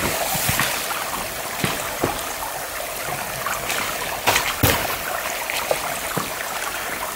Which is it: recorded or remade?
recorded